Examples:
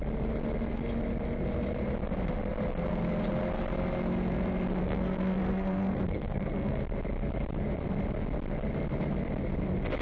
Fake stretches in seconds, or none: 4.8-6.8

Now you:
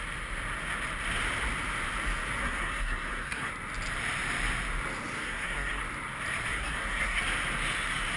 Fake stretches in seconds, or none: 2.4-3.5; 5.2-5.8; 6.5-7.2

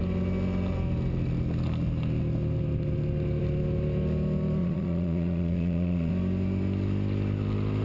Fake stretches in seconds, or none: 4.6-6.1